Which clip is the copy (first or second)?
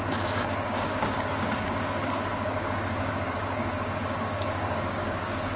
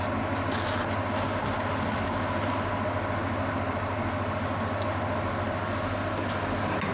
first